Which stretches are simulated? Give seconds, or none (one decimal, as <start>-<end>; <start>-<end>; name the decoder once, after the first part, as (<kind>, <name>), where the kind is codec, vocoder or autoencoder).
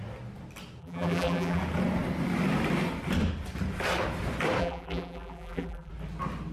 0.8-1.6 (vocoder, BigVGAN v2); 4.6-5.9